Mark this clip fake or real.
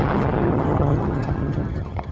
fake